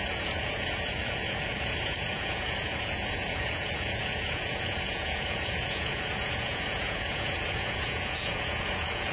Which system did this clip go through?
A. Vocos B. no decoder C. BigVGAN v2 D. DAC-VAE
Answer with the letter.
A